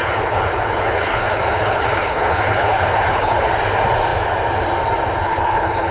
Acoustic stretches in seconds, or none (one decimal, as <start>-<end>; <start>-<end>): 3.5-5.2